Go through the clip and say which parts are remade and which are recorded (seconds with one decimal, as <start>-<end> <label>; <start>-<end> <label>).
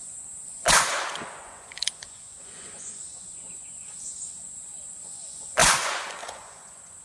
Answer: 0.0-7.0 remade